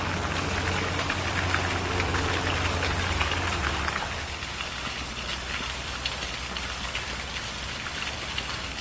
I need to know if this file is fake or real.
real